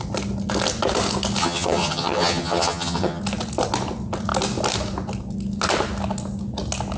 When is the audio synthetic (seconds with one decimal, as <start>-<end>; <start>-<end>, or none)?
1.4-3.2